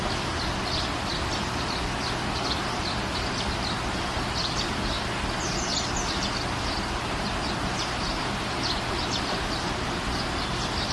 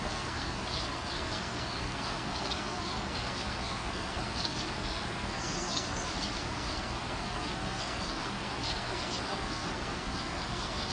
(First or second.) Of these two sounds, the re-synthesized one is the second